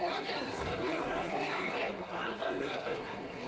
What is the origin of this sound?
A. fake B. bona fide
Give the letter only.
A